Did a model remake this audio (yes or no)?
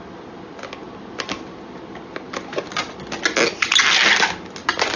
no